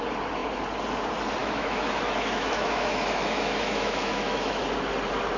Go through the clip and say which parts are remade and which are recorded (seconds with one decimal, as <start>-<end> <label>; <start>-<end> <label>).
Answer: 0.0-1.4 recorded; 1.4-4.6 remade; 4.6-5.4 recorded